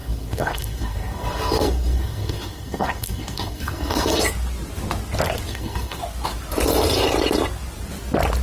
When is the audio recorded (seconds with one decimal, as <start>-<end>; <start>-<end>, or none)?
4.2-5.5; 6.0-8.4